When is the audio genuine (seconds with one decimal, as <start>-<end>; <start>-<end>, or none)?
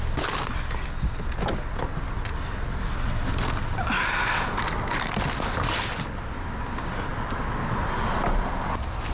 0.0-9.1